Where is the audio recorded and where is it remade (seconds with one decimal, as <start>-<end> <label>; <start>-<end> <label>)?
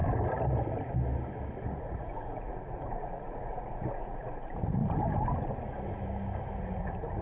0.0-1.8 recorded; 1.8-4.8 remade; 4.8-6.6 recorded; 6.6-7.2 remade